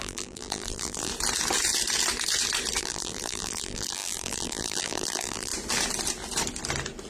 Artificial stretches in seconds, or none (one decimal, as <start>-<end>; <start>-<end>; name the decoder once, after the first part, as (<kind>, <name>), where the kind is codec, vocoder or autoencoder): 0.0-1.1 (vocoder, BigVGAN v2); 2.8-5.5